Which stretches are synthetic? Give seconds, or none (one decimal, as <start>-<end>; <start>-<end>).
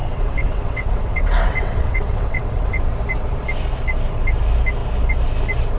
0.0-2.8